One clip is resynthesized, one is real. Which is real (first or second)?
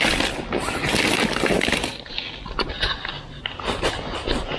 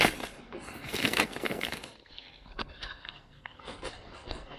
first